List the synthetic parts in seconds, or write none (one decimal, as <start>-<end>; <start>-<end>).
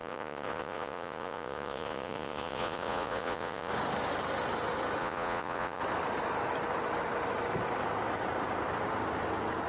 0.0-3.7; 5.0-5.8